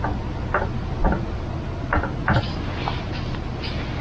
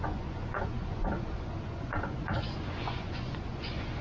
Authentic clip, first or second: first